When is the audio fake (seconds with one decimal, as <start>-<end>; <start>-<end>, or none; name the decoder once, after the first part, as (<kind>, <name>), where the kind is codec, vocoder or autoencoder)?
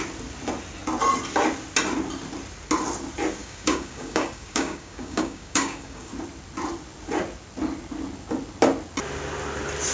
3.4-6.1 (codec, DAC)